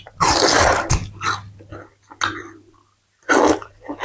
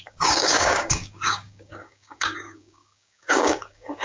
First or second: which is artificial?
second